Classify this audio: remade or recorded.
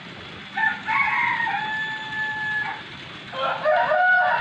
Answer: recorded